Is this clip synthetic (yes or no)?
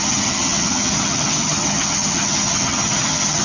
yes